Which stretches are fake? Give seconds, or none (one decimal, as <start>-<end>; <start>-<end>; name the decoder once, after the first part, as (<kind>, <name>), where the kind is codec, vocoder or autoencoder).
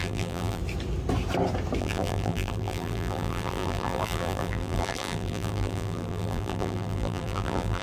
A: 0.0-0.6 (vocoder, BigVGAN v2); 1.8-7.8